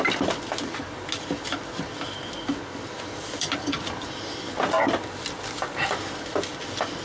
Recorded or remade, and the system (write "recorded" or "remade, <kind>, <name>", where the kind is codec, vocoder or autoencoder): recorded